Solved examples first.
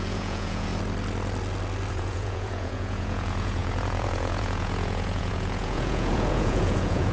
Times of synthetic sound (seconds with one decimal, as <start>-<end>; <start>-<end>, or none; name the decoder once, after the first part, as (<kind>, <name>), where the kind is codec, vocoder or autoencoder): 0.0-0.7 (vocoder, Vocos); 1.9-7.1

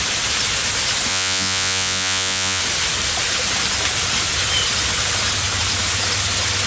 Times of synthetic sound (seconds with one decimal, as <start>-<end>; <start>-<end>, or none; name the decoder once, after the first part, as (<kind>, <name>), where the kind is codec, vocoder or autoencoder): 1.1-2.6 (vocoder, Vocos)

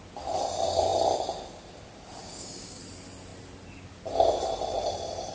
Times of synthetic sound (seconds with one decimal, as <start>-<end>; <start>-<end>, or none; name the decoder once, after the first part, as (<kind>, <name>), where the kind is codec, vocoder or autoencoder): 2.2-2.8 (codec, DAC)